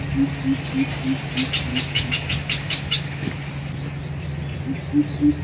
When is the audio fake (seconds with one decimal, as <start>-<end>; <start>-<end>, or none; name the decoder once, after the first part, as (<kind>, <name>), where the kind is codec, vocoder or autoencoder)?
1.7-3.3 (autoencoder, DAC-VAE)

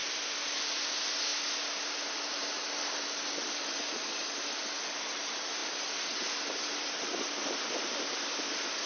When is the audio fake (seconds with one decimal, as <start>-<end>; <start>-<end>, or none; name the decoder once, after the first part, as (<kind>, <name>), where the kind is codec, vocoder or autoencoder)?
none

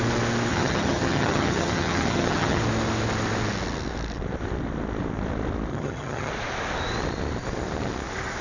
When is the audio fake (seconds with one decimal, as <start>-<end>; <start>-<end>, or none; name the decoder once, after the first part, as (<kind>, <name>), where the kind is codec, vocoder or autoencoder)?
0.5-2.6 (vocoder, HiFi-GAN); 5.7-6.3

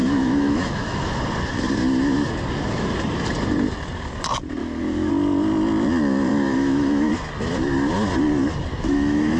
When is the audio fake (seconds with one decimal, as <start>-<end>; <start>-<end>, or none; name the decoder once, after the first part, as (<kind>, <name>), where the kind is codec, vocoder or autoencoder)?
0.0-1.2 (autoencoder, DAC-VAE); 4.6-5.1; 6.3-7.1; 8.7-9.4